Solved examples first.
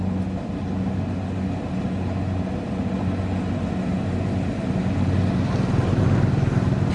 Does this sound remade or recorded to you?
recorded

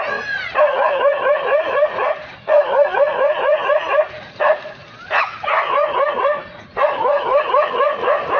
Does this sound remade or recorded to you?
remade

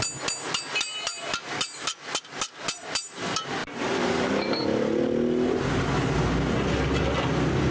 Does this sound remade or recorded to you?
recorded